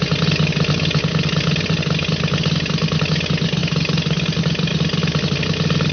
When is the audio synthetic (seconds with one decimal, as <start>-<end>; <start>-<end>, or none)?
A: none